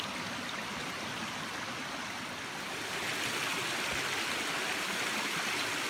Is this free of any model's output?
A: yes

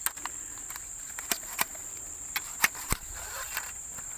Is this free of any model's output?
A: yes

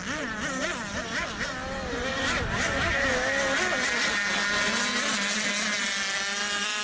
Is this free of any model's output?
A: yes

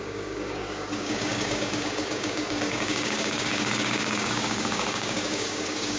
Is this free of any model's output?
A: no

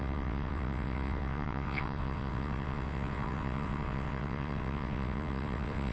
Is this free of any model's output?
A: no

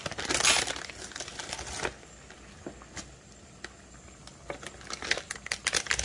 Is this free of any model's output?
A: yes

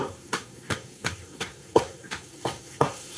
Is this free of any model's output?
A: no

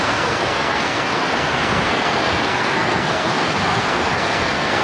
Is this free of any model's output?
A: no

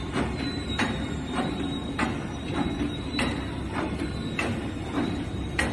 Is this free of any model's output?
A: no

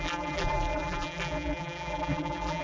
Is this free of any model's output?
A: no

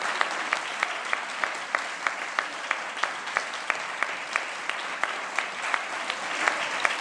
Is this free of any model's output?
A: no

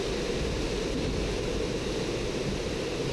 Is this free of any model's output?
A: yes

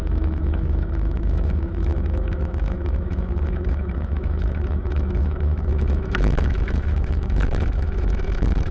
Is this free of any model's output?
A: no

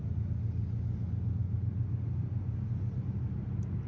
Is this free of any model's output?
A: yes